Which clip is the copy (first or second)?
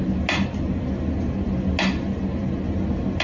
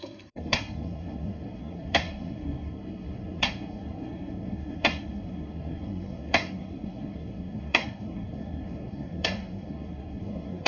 second